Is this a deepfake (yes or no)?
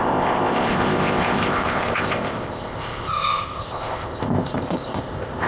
yes